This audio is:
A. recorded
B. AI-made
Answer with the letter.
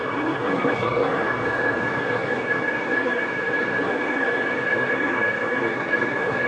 B